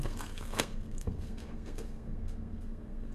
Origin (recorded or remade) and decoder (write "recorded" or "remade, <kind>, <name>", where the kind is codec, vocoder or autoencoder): remade, codec, SNAC